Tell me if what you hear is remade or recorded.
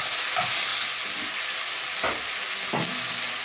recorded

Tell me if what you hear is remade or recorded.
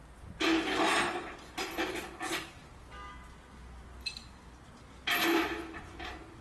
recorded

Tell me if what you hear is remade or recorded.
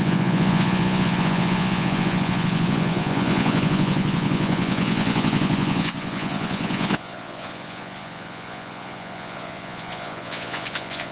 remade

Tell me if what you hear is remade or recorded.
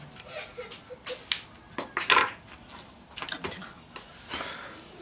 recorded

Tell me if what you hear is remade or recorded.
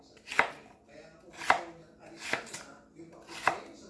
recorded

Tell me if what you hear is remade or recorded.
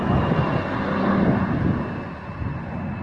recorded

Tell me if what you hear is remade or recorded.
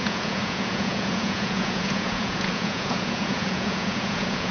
remade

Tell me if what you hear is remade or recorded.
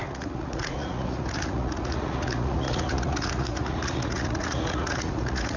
remade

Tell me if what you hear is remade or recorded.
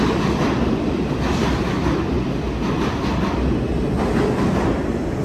recorded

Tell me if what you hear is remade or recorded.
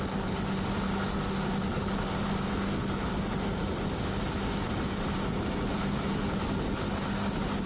recorded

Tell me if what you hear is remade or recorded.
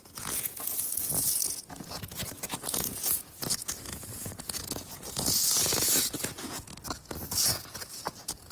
remade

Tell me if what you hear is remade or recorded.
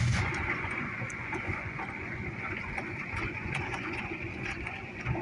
remade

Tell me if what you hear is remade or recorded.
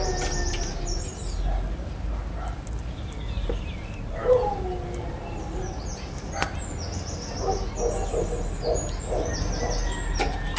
recorded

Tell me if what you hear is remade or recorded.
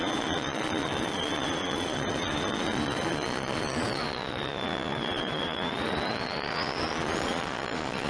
remade